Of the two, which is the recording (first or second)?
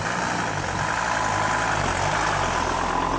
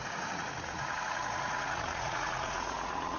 first